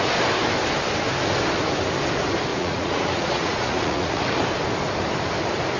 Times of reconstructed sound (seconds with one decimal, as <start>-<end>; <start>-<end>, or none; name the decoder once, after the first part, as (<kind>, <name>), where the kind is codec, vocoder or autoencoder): 2.5-4.2 (vocoder, Vocos)